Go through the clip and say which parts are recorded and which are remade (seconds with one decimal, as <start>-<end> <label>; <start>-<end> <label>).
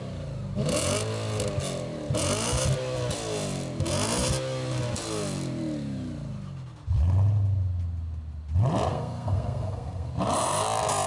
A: 0.0-8.9 recorded; 8.9-10.1 remade; 10.1-11.1 recorded